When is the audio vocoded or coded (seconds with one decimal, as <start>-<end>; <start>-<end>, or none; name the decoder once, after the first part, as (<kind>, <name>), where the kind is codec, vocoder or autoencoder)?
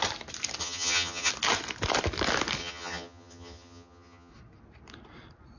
0.6-1.3 (vocoder, HiFi-GAN); 2.6-4.3